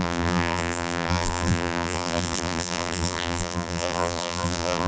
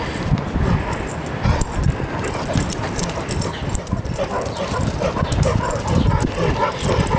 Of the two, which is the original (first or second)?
second